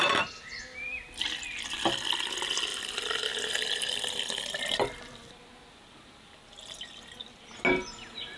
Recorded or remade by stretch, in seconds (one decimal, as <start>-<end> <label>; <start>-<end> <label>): 0.0-8.4 recorded